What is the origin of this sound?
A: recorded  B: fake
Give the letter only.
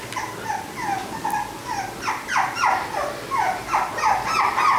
A